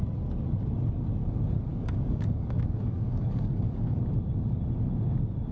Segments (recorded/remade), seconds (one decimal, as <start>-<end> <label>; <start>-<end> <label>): 0.0-1.7 recorded; 1.7-4.0 remade; 4.0-5.5 recorded